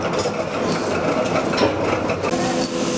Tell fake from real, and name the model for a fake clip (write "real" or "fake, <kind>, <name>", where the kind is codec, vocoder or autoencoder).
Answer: real